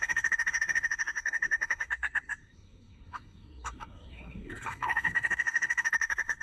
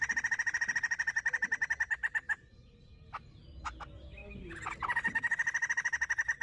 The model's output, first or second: first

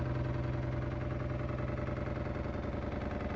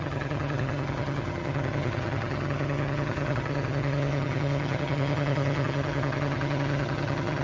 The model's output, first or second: second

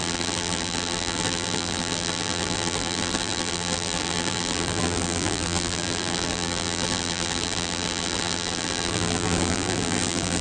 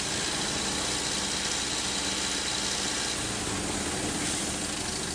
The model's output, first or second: first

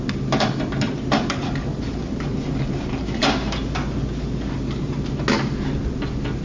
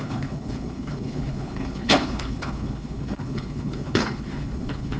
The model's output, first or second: second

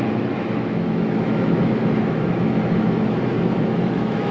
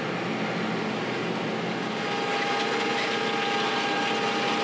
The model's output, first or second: first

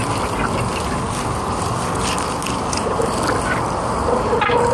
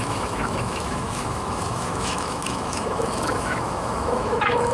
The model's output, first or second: second